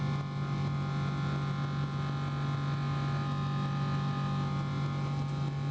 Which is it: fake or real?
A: real